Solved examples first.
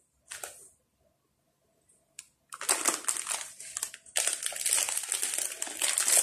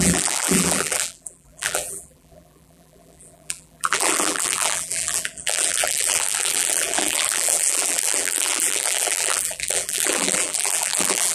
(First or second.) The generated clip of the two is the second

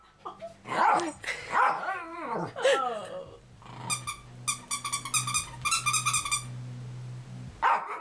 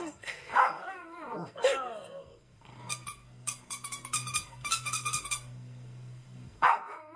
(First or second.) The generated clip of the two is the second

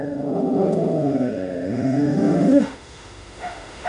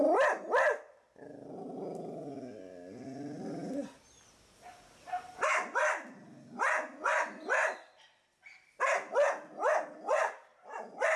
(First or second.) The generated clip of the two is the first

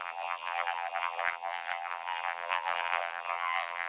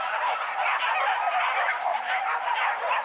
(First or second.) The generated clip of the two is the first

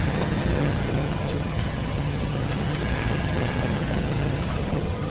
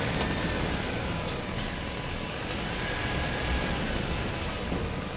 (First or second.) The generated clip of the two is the first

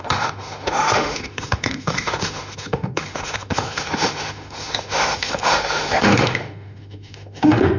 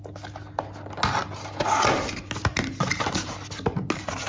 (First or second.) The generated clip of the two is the first